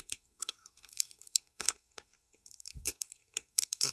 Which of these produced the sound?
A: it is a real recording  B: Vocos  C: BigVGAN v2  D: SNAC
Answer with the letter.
D